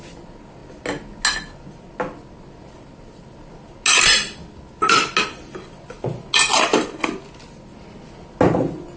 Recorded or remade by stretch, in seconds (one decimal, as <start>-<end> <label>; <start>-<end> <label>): 0.0-9.0 recorded